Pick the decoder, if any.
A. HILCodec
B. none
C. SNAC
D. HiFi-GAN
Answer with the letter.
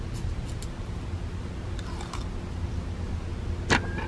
B